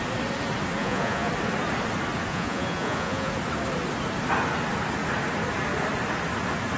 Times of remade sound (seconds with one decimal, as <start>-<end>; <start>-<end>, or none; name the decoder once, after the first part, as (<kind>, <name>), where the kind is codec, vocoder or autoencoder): 0.8-1.3 (vocoder, Vocos); 2.3-3.3